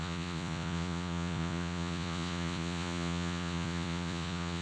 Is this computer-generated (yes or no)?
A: yes